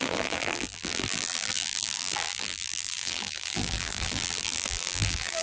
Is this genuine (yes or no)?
no